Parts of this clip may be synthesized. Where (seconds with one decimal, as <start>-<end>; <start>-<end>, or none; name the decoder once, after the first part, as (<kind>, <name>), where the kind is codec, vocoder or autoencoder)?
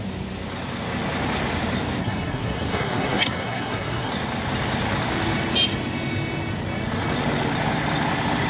2.0-4.1 (codec, SNAC)